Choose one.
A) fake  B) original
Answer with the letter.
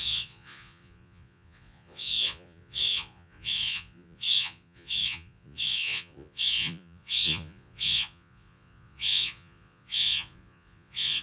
A